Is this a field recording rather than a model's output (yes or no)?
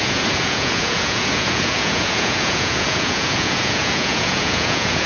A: no